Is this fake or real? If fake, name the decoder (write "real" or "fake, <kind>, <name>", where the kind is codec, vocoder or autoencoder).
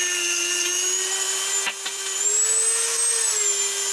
real